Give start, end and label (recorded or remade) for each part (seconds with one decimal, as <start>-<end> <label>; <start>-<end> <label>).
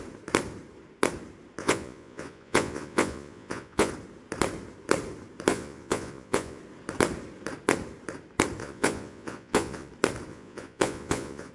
0.0-1.6 recorded; 1.6-3.9 remade; 3.9-5.5 recorded; 5.5-6.6 remade; 6.6-8.6 recorded; 8.6-9.9 remade; 9.9-10.3 recorded; 10.3-11.5 remade